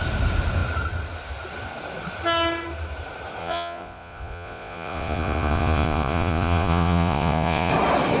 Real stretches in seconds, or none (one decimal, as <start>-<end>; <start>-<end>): 0.0-3.4; 7.7-8.2